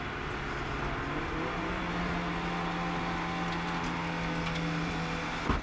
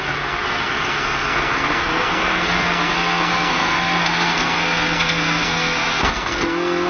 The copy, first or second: second